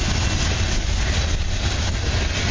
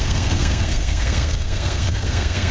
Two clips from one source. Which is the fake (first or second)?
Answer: second